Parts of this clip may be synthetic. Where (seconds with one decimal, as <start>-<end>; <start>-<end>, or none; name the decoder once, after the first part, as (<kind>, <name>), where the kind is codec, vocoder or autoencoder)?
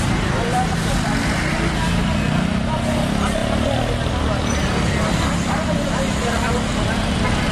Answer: none